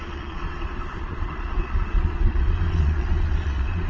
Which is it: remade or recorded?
remade